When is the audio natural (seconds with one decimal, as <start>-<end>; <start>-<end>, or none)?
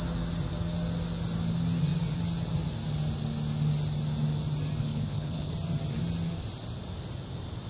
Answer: 0.0-4.8; 5.5-7.7